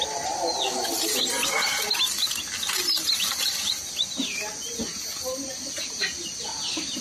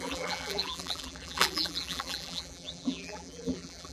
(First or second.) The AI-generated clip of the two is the second